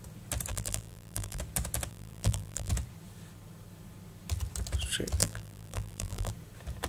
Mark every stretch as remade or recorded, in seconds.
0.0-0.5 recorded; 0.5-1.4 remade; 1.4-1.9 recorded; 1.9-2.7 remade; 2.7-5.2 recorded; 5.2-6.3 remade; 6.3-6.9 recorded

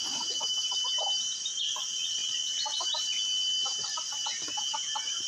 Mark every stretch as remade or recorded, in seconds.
0.0-5.3 recorded

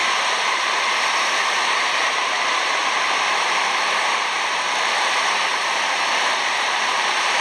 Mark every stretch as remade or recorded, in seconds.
0.0-7.4 remade

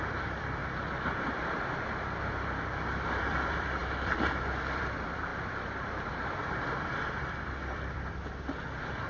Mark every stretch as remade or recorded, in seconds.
0.0-0.6 remade; 0.6-2.9 recorded; 2.9-3.8 remade; 3.8-4.8 recorded; 4.8-5.3 remade; 5.3-6.1 recorded; 6.1-9.1 remade

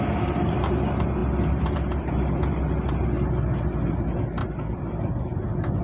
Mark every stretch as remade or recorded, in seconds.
0.0-1.2 recorded; 1.2-2.5 remade; 2.5-4.4 recorded; 4.4-5.8 remade